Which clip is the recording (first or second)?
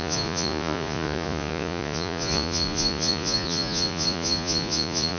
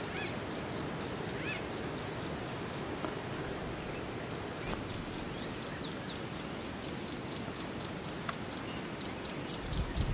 second